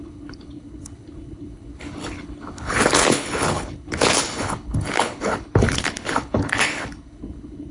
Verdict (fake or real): fake